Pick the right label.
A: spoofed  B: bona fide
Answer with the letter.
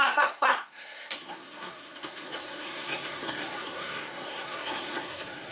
A